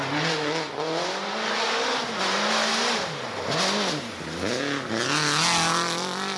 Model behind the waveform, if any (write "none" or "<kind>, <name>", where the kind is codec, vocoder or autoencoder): none